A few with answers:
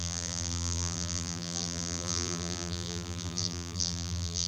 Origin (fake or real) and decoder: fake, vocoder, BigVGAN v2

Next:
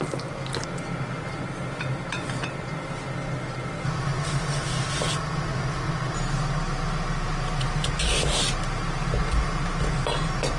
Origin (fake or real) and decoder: real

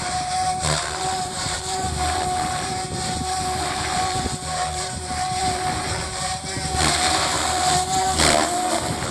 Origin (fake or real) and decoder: fake, vocoder, BigVGAN v2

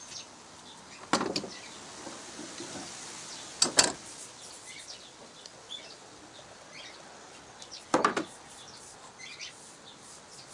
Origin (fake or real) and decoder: real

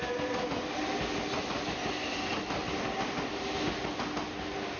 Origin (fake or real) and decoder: real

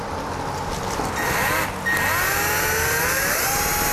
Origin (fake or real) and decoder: real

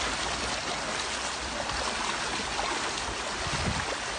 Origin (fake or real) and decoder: real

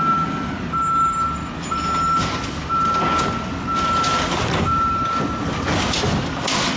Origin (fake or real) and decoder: real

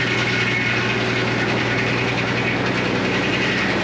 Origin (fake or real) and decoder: real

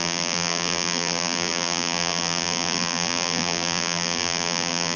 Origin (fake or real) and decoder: fake, vocoder, BigVGAN v2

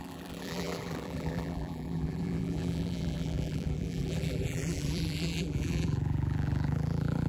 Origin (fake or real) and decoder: fake, vocoder, BigVGAN v2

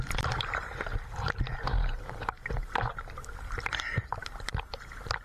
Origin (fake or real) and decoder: real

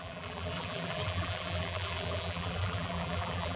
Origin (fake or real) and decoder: fake, vocoder, BigVGAN v2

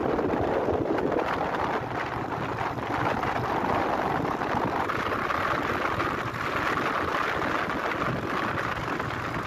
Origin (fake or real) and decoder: real